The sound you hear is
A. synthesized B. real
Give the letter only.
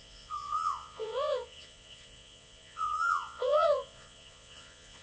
A